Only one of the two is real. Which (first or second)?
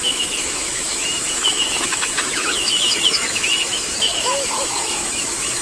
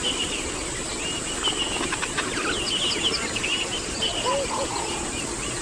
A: second